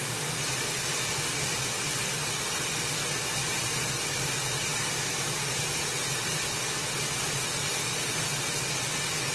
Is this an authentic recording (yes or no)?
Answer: yes